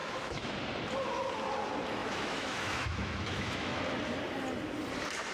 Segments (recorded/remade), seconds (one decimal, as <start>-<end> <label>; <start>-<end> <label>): 0.0-0.5 remade; 0.5-2.0 recorded; 2.0-3.8 remade; 3.8-5.3 recorded